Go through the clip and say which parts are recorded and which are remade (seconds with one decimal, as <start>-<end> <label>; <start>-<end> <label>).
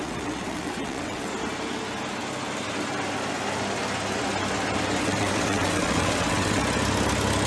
0.0-1.3 remade; 1.3-5.0 recorded; 5.0-6.6 remade; 6.6-7.5 recorded